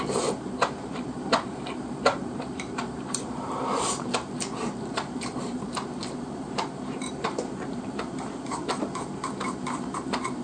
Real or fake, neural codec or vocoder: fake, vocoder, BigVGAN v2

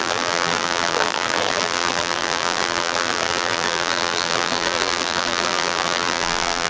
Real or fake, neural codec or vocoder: fake, vocoder, BigVGAN v2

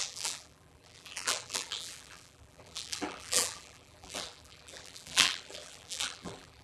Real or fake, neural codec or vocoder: fake, vocoder, BigVGAN v2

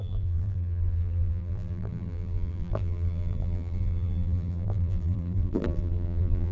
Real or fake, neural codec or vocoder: fake, vocoder, BigVGAN v2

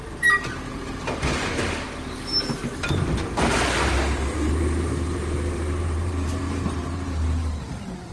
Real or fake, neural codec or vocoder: fake, vocoder, BigVGAN v2